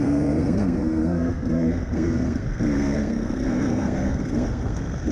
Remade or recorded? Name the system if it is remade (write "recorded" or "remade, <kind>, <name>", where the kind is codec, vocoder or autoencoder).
remade, codec, SNAC